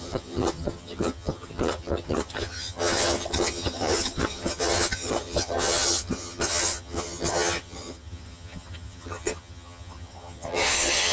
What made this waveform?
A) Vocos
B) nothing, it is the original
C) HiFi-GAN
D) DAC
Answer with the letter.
C